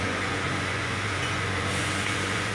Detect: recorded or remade remade